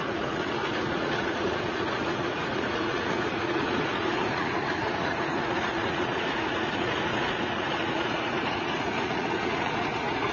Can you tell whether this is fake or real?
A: fake